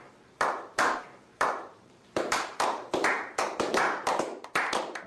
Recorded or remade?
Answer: remade